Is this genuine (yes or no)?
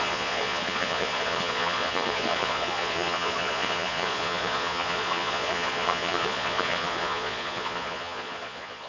no